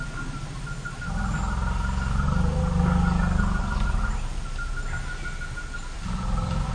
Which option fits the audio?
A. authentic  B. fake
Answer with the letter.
A